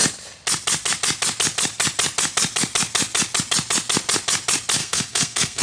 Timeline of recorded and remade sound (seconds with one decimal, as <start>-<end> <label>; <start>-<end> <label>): 0.0-4.8 recorded; 4.8-5.6 remade